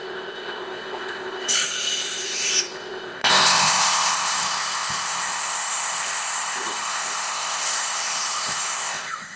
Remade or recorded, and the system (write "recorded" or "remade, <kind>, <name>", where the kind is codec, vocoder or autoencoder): remade, codec, ZipCodec